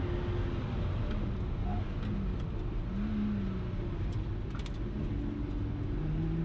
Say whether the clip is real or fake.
real